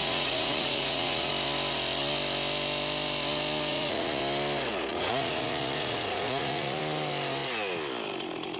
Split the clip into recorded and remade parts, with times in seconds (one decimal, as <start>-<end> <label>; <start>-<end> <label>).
0.0-1.3 remade; 1.3-3.7 recorded; 3.7-4.2 remade; 4.2-4.9 recorded; 4.9-6.8 remade; 6.8-8.6 recorded